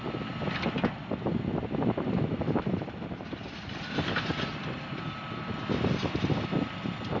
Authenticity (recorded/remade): recorded